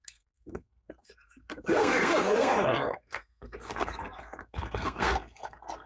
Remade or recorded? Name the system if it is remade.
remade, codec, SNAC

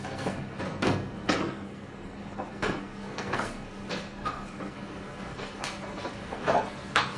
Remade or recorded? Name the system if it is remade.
remade, codec, SNAC